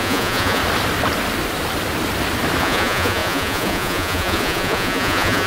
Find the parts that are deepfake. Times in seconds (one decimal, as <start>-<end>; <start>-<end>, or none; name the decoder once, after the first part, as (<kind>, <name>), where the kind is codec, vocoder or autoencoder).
0.0-0.6 (vocoder, Vocos); 2.6-5.5

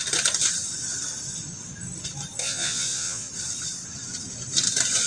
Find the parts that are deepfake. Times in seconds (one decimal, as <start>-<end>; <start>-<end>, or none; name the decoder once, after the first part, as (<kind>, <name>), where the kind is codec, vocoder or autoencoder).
2.4-3.3 (vocoder, Vocos)

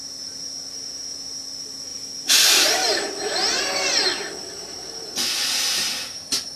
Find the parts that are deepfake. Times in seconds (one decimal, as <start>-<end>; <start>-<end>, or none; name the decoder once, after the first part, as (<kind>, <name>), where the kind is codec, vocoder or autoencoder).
none

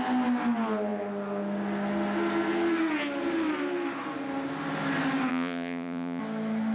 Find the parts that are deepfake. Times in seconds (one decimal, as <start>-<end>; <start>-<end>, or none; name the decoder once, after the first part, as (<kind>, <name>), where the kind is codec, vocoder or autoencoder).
5.3-6.2 (vocoder, Vocos)